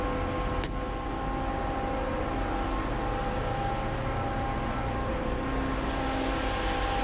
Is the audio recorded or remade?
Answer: recorded